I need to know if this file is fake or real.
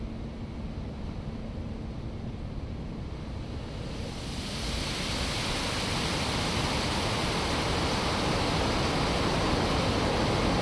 real